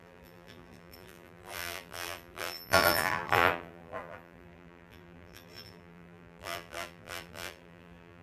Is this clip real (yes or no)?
no